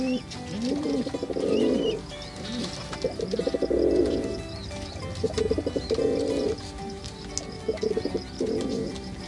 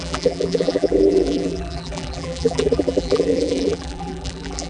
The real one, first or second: first